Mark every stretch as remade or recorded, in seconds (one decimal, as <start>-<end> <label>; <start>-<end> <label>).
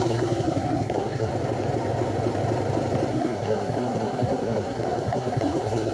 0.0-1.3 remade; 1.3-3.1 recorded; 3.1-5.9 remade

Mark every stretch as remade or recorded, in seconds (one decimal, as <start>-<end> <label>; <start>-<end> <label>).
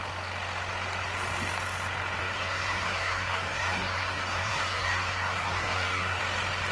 0.0-2.2 recorded; 2.2-6.2 remade; 6.2-6.7 recorded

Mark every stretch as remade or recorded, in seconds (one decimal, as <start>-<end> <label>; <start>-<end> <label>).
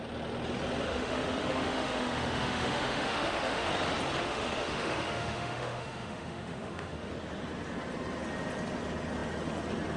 0.0-0.9 recorded; 0.9-3.7 remade; 3.7-4.2 recorded; 4.2-7.1 remade; 7.1-10.0 recorded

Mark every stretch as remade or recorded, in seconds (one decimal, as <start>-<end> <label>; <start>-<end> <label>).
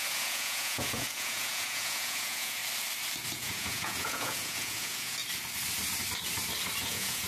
0.0-2.6 remade; 2.6-3.3 recorded; 3.3-5.2 remade; 5.2-6.8 recorded; 6.8-7.3 remade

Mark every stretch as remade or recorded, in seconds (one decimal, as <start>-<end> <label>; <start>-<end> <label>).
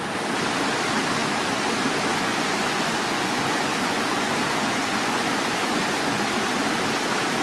0.0-2.1 recorded; 2.1-6.2 remade; 6.2-7.4 recorded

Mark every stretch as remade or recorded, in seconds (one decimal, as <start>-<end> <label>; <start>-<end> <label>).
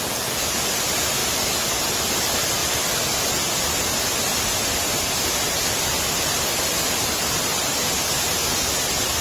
0.0-9.2 recorded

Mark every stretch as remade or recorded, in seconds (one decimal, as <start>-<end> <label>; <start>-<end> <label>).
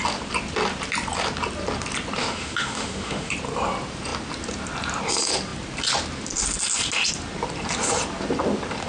0.0-2.2 recorded; 2.2-3.3 remade; 3.3-8.9 recorded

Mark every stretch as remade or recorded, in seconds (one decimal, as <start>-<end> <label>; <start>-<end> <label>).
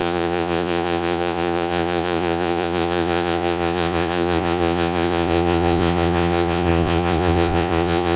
0.0-8.2 remade